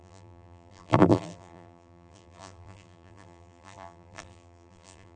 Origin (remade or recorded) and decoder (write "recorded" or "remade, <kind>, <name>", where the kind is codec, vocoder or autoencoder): remade, vocoder, BigVGAN v2